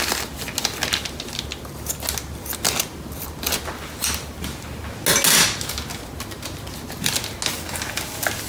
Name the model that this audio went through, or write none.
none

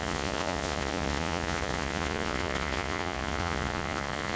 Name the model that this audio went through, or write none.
vocoder, Vocos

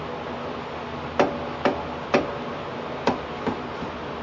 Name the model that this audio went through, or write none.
none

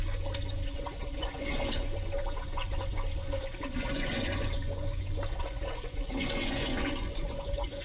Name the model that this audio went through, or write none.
vocoder, Vocos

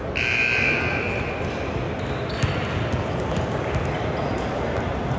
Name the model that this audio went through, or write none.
none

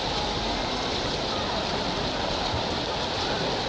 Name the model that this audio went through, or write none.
none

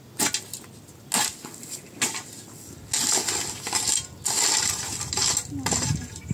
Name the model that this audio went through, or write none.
none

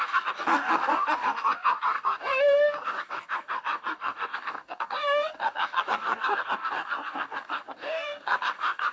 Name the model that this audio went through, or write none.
codec, DAC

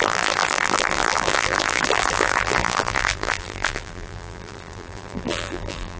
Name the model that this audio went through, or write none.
vocoder, BigVGAN v2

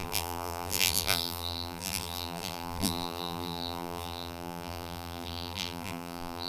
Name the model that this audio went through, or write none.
vocoder, BigVGAN v2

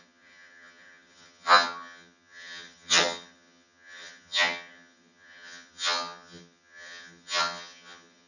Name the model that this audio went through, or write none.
vocoder, HiFi-GAN